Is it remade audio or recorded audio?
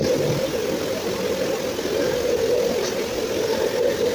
recorded